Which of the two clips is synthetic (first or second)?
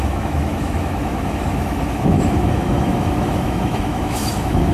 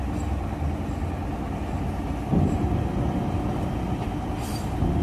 first